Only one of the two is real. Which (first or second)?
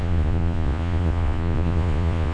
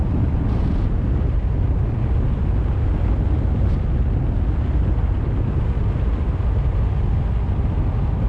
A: second